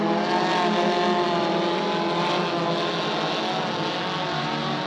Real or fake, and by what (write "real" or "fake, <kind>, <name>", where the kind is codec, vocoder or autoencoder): real